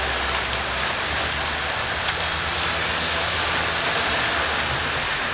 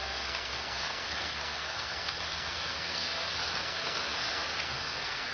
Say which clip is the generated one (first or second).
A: second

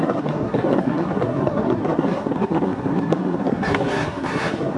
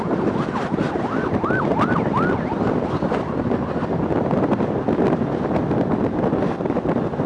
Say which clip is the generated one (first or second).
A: first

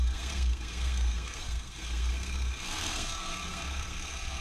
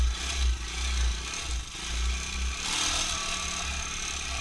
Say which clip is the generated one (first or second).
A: first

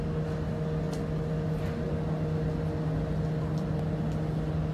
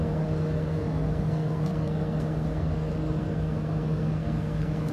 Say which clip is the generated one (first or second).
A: second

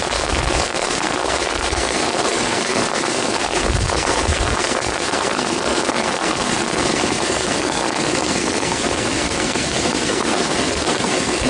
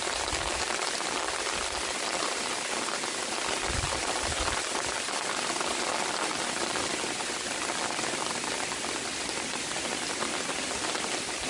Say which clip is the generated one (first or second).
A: first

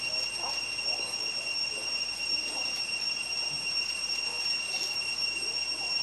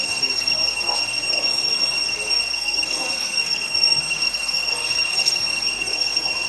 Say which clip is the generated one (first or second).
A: second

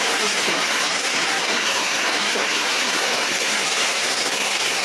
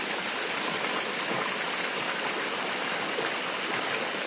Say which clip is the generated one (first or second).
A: first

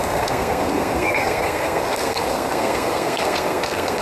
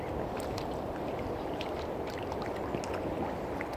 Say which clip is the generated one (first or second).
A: first